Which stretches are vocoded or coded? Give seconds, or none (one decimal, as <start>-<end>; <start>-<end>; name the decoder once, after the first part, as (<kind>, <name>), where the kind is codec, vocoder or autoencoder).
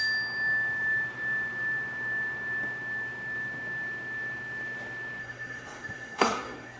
5.2-6.8 (codec, SNAC)